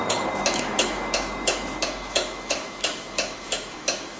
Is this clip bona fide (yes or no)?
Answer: no